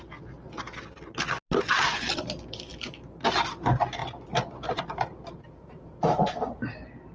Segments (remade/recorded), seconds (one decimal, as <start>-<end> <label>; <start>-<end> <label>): 0.0-4.0 recorded; 4.0-5.9 remade; 5.9-7.1 recorded